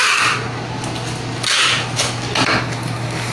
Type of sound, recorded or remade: recorded